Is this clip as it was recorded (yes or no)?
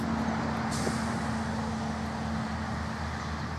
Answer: yes